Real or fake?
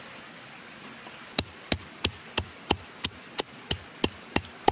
real